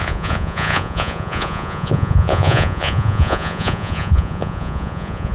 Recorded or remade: remade